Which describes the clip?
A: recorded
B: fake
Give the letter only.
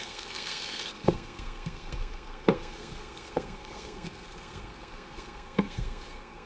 B